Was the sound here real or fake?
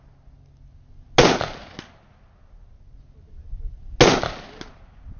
real